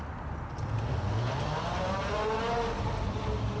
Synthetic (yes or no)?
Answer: no